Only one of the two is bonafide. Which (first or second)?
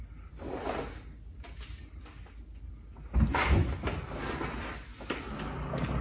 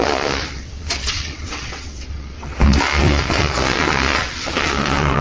first